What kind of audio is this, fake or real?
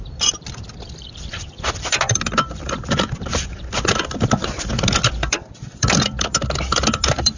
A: fake